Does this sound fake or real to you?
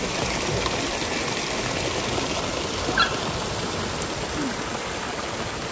real